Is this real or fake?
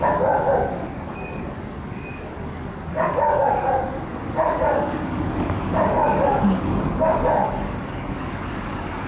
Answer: fake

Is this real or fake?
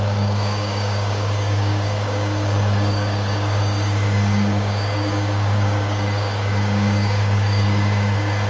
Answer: fake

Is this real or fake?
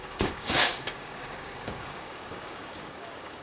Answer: fake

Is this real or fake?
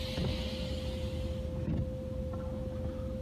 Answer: real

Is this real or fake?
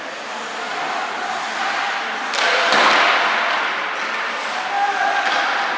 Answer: real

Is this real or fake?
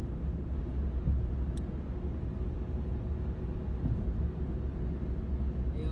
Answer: real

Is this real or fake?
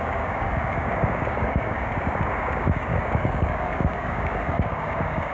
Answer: fake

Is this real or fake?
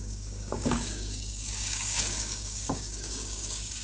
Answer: fake